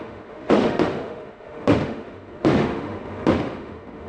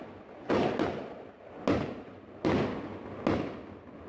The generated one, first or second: first